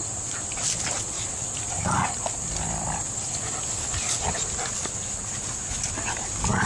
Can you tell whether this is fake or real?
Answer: real